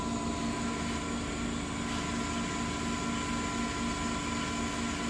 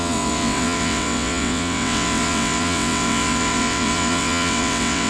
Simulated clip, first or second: second